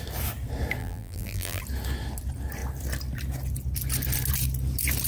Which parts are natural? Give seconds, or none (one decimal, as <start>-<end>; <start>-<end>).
0.0-0.8; 1.6-5.1